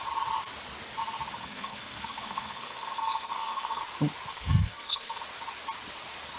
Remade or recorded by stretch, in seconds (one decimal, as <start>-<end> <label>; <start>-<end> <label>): 0.0-1.4 recorded; 1.4-3.8 remade; 3.8-4.3 recorded; 4.3-5.2 remade; 5.2-6.4 recorded